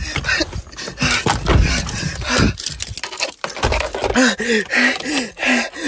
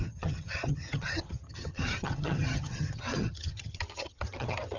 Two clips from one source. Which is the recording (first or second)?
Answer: first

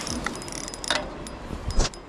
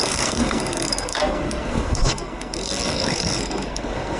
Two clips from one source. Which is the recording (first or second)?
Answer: first